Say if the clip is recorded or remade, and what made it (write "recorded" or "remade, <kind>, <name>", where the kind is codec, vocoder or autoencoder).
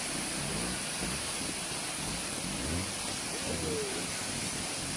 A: recorded